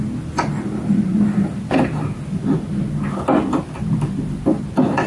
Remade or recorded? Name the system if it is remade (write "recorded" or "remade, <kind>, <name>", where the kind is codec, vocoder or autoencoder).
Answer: recorded